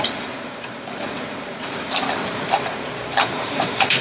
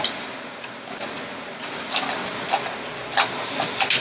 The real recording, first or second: second